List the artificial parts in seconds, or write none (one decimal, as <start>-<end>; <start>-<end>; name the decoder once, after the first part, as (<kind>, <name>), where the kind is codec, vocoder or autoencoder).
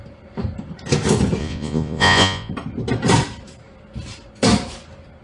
1.4-2.5 (vocoder, Vocos)